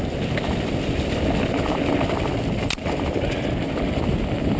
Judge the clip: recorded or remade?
recorded